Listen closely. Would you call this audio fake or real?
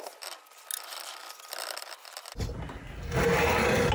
real